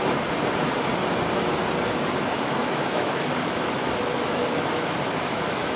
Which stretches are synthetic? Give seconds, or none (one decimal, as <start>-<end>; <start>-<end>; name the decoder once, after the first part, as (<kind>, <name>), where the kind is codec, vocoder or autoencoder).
2.6-5.8 (autoencoder, DAC-VAE)